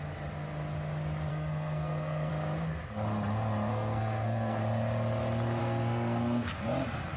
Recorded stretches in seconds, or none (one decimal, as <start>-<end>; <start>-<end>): 0.0-1.3; 2.3-3.7; 4.6-5.6; 6.6-7.2